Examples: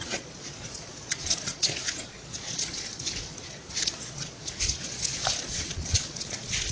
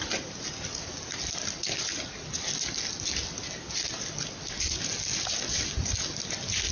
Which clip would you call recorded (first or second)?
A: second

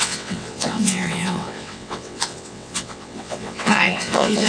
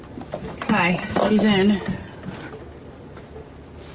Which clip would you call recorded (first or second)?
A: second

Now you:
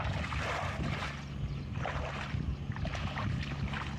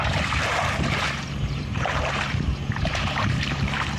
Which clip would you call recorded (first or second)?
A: first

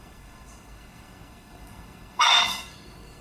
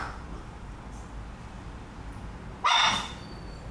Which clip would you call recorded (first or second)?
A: second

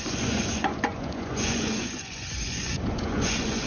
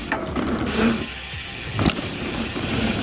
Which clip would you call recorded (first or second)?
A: second